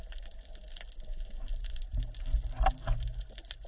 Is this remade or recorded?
recorded